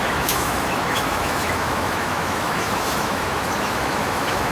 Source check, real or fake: fake